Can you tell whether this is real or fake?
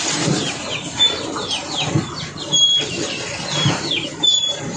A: real